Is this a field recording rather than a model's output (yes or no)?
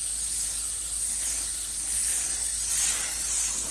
yes